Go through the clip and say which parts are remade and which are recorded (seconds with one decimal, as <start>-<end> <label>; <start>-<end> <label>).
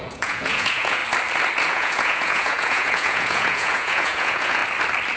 0.0-1.0 remade; 1.0-1.7 recorded; 1.7-4.6 remade; 4.6-5.2 recorded